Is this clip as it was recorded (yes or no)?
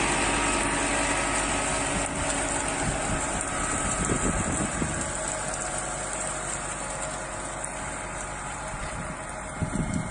yes